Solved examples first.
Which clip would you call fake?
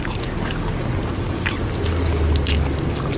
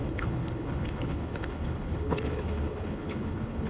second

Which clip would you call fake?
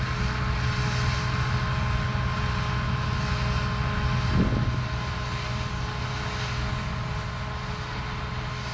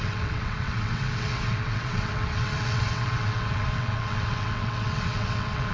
second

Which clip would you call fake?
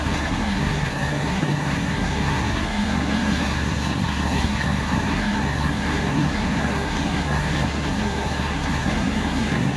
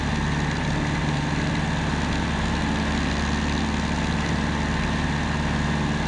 first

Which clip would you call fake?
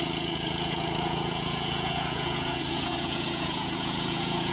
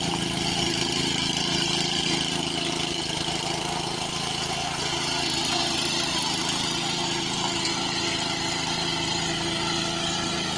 first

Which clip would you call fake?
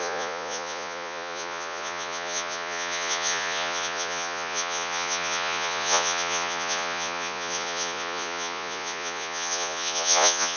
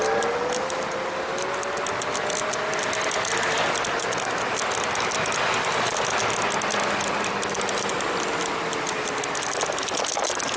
first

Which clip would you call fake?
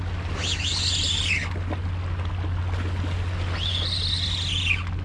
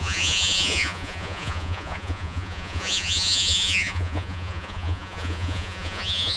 second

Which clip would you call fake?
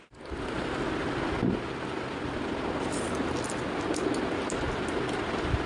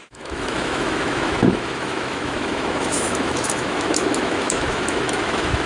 second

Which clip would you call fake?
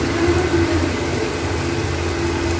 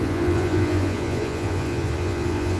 second